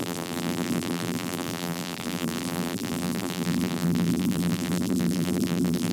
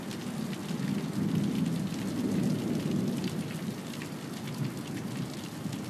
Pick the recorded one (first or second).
second